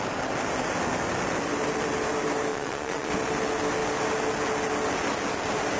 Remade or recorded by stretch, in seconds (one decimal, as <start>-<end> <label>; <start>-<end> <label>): 0.0-2.5 recorded; 2.5-3.1 remade; 3.1-5.8 recorded